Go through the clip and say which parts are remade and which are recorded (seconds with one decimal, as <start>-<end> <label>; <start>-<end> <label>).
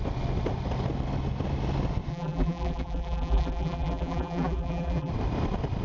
0.0-2.1 recorded; 2.1-5.1 remade; 5.1-5.8 recorded